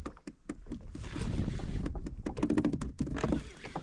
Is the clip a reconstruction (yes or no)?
no